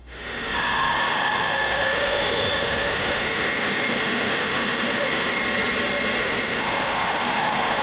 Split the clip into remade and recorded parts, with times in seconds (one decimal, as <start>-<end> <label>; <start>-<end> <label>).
0.0-5.4 remade; 5.4-6.2 recorded; 6.2-7.8 remade